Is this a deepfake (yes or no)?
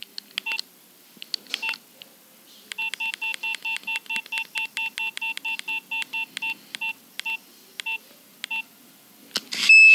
no